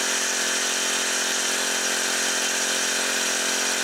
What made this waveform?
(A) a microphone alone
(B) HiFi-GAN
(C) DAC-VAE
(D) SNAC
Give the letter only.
A